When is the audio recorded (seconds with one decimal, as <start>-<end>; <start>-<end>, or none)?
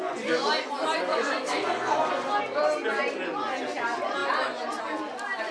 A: 0.0-1.1; 2.4-5.5